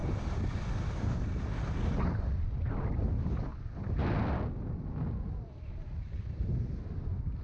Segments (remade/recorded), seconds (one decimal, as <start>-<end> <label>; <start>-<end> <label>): 0.0-7.4 recorded